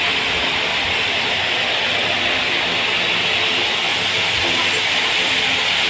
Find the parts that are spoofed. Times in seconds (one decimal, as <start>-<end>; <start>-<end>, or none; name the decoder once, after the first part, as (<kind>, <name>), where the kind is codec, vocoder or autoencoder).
none

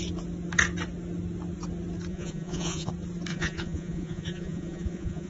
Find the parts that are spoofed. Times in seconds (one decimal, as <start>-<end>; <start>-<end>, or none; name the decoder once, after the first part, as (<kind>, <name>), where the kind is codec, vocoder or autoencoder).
2.1-2.9 (vocoder, Vocos); 3.3-5.3

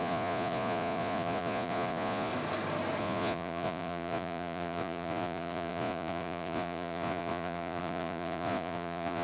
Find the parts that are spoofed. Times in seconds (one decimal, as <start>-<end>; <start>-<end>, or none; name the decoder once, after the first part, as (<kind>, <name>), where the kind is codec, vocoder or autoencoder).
0.0-2.3 (vocoder, Vocos); 3.0-9.2

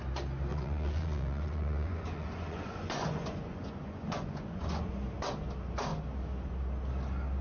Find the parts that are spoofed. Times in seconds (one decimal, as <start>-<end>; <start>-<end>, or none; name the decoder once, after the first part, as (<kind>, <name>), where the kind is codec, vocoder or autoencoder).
0.5-4.9 (vocoder, Vocos)

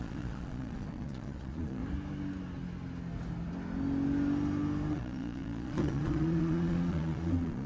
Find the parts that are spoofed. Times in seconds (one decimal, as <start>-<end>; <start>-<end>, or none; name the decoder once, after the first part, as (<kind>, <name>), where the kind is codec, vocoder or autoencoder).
0.0-1.8 (vocoder, Vocos); 4.9-7.7

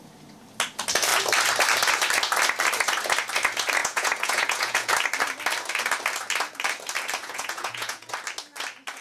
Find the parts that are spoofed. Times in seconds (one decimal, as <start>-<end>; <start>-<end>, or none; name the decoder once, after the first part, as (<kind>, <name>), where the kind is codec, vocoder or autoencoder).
3.8-4.9 (vocoder, Vocos); 7.2-8.1

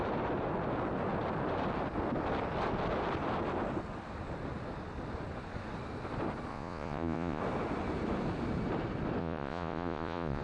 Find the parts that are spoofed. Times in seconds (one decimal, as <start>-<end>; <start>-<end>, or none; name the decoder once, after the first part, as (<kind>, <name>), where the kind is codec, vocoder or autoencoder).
6.5-7.4 (vocoder, Vocos); 9.2-10.4

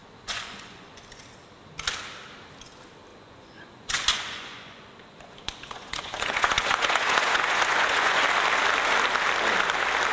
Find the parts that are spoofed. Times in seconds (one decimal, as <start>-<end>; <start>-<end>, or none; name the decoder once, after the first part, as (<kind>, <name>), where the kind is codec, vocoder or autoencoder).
0.0-1.2 (vocoder, Vocos); 3.1-8.2